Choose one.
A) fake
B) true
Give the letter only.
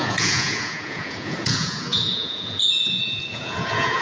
A